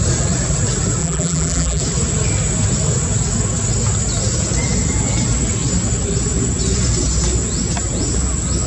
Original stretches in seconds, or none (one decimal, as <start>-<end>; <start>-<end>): 0.0-1.0; 1.8-8.7